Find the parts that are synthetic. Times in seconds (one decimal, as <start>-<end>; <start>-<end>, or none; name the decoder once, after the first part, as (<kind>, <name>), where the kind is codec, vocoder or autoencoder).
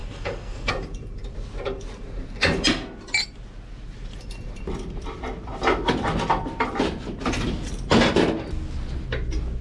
0.0-0.7 (codec, SNAC)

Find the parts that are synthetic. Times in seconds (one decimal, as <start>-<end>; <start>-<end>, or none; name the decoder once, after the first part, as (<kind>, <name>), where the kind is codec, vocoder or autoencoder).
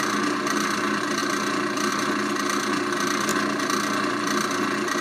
none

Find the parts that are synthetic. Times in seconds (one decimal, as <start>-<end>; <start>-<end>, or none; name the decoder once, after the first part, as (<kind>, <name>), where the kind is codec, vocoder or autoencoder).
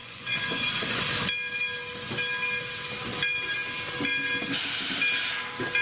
0.0-1.0 (vocoder, Vocos)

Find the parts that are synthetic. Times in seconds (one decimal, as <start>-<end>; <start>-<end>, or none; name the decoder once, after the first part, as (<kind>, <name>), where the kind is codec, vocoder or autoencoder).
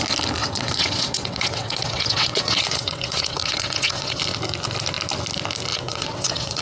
0.4-4.2 (vocoder, WaveNeXt); 5.7-6.6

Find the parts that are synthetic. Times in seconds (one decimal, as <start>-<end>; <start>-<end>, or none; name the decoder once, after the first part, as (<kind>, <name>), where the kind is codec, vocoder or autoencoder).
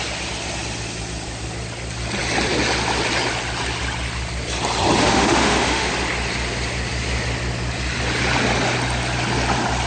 5.0-5.9 (autoencoder, DAC-VAE)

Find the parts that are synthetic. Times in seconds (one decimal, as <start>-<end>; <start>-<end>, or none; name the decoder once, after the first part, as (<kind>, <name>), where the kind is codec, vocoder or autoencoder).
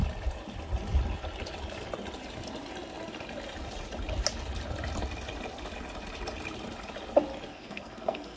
7.5-8.4 (codec, SNAC)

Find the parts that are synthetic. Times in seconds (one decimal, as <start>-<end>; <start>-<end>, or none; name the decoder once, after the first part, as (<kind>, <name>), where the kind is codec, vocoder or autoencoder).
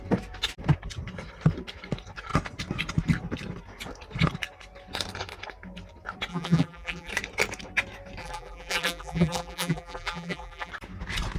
6.3-7.1 (vocoder, BigVGAN v2); 8.2-10.7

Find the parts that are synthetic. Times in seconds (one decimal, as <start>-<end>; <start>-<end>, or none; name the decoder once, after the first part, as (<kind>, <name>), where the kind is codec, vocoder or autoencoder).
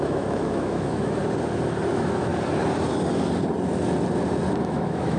0.0-1.2 (autoencoder, DAC-VAE); 1.9-2.3; 4.6-5.2